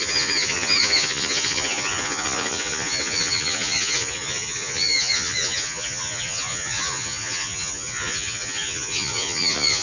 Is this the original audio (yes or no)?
no